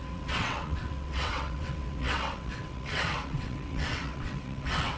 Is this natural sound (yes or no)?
no